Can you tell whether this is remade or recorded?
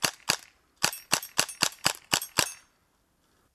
remade